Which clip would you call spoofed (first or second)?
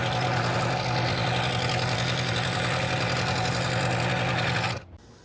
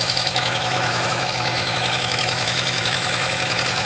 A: second